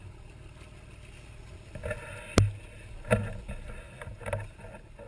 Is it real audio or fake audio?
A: real